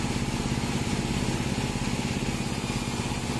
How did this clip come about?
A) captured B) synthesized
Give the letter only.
A